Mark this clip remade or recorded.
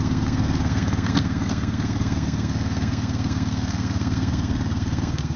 remade